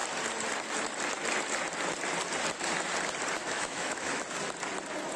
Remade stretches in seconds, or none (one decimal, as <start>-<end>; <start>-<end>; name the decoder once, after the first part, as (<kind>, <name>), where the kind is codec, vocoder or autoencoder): 3.4-4.2 (autoencoder, DAC-VAE)